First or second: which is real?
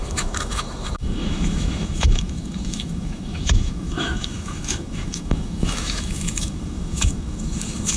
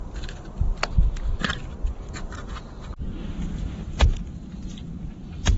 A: second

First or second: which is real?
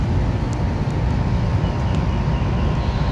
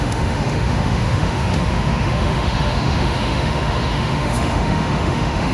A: first